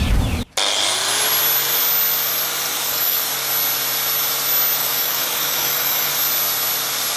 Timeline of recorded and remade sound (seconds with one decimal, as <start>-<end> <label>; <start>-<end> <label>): 0.0-2.7 recorded; 2.7-3.3 remade; 3.3-4.8 recorded; 4.8-6.1 remade; 6.1-7.2 recorded